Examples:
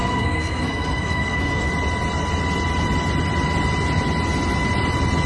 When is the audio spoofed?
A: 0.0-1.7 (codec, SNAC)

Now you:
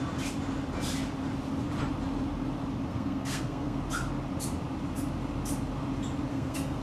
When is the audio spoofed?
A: 2.9-3.8 (codec, SNAC); 6.3-6.8

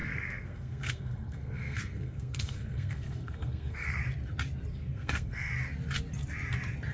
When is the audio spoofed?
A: 0.0-4.0 (codec, SNAC); 4.7-5.5